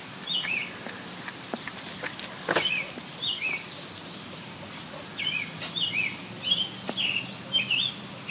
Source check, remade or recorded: recorded